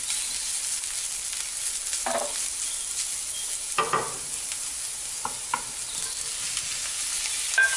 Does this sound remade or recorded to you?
recorded